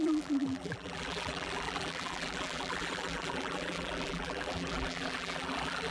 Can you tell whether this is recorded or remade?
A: remade